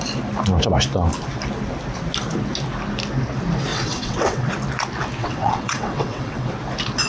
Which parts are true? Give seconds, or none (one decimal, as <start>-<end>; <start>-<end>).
0.0-3.7; 4.5-5.2; 6.5-7.1

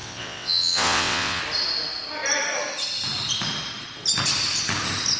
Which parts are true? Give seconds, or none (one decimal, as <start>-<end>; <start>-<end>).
1.4-5.2

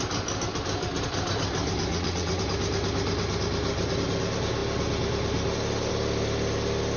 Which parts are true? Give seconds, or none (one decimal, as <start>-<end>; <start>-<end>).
0.0-1.9; 2.4-7.0

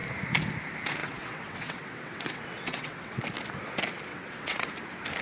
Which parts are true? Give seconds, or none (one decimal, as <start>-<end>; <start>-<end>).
0.0-1.0; 3.2-4.1; 4.7-5.2